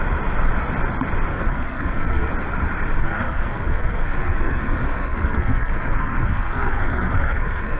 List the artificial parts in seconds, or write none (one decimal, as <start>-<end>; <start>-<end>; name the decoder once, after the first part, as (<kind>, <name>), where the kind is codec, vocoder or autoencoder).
1.3-2.3 (codec, SNAC); 3.0-7.8